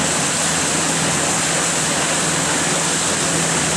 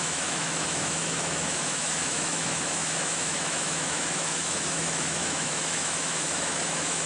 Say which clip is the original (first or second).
first